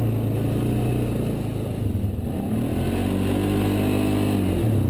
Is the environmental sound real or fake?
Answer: real